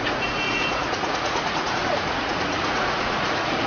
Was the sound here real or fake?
fake